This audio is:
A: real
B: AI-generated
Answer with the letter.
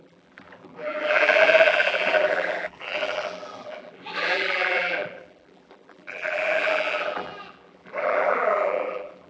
B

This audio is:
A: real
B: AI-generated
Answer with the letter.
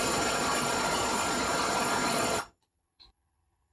B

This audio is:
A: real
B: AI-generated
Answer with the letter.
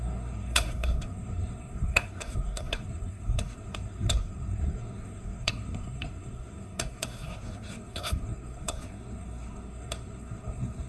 B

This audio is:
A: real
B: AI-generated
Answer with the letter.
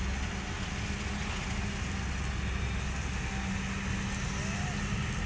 A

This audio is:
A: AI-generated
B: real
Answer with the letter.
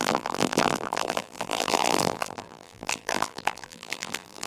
A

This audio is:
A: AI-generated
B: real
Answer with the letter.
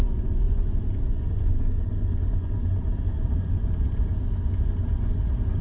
A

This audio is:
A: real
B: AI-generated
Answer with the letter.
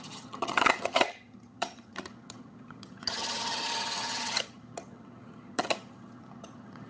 B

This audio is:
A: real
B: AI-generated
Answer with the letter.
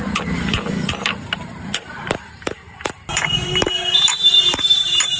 B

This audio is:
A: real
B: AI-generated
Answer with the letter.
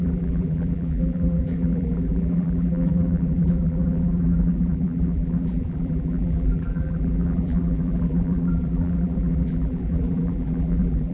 B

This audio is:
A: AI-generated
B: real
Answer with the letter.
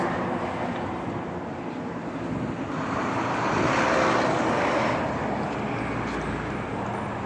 B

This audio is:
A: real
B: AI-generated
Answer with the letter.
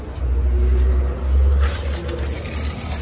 A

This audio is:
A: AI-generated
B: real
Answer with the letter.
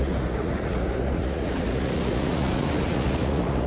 A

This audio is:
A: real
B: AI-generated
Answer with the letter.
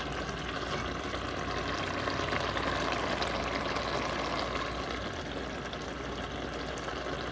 A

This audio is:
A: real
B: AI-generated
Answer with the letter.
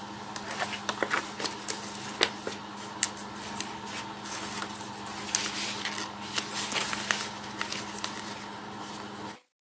A